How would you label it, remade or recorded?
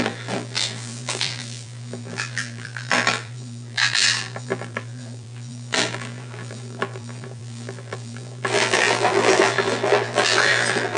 remade